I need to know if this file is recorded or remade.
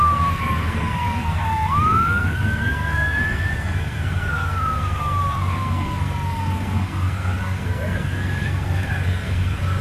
remade